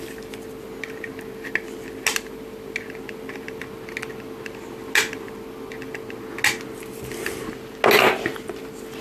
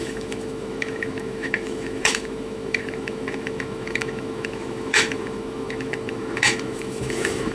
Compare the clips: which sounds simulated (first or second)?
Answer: second